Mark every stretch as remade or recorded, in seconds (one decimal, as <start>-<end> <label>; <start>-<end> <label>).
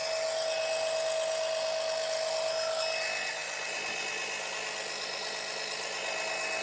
0.0-6.6 recorded